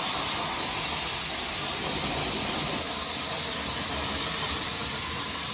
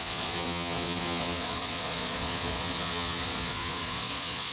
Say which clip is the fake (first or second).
second